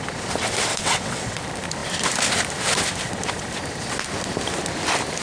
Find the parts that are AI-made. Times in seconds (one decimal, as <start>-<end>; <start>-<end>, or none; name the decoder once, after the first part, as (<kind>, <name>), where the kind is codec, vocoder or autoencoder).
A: 0.7-1.4 (vocoder, WaveNeXt)